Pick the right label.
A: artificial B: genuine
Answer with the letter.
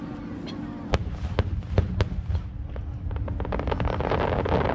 B